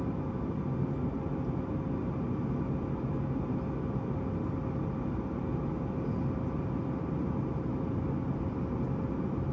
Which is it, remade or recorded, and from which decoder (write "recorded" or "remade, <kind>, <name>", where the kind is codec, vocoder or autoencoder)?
recorded